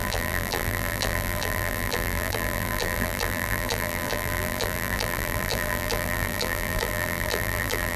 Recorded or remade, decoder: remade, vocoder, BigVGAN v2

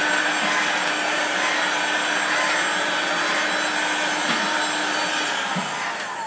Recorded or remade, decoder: recorded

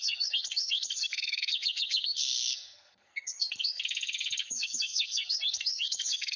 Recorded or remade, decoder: remade, codec, SNAC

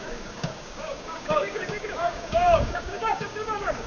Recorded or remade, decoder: remade, codec, DAC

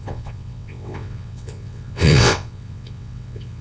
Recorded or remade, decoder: remade, vocoder, WaveNeXt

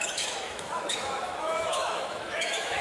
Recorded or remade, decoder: remade, autoencoder, DAC-VAE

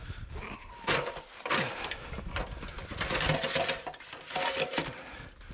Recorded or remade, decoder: recorded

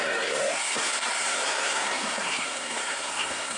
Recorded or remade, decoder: remade, codec, SNAC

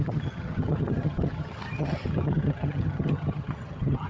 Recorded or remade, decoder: remade, vocoder, HiFi-GAN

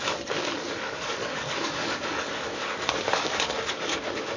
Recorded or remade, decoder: remade, codec, DAC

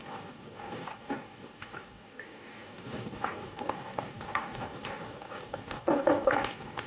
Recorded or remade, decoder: remade, codec, DAC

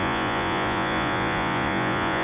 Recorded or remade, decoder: remade, vocoder, Vocos